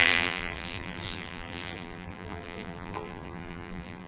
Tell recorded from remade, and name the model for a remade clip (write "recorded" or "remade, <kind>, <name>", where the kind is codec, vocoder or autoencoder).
remade, vocoder, BigVGAN v2